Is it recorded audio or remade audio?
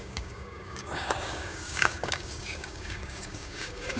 remade